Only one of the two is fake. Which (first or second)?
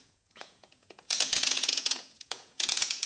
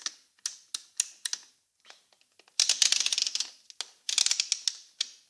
first